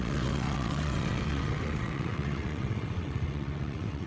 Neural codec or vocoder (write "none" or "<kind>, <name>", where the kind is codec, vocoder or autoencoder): vocoder, WaveNeXt